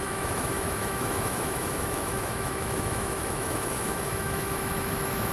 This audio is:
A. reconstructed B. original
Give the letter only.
A